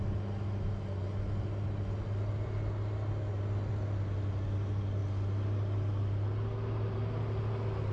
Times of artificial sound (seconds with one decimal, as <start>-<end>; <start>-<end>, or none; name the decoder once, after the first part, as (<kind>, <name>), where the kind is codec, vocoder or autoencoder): none